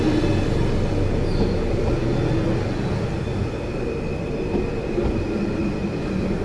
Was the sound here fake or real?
real